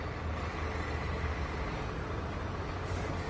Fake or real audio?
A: real